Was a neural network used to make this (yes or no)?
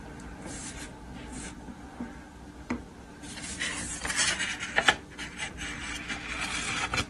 no